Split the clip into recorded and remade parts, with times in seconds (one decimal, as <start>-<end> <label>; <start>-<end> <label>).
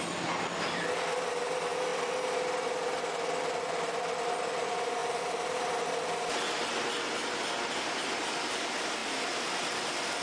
0.0-1.9 recorded; 1.9-3.0 remade; 3.0-5.0 recorded; 5.0-5.7 remade; 5.7-9.0 recorded; 9.0-9.6 remade; 9.6-10.2 recorded